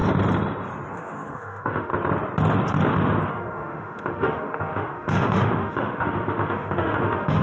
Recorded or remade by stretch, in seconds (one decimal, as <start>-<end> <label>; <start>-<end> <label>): 0.0-0.9 recorded; 0.9-1.9 remade; 1.9-3.3 recorded; 3.3-7.4 remade